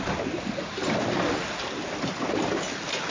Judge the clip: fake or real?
real